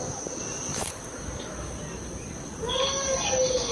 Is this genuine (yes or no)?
yes